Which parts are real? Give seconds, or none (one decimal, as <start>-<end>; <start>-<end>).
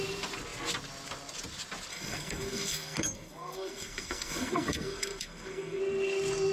0.0-1.9; 5.8-6.5